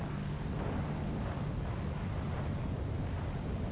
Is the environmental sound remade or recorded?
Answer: recorded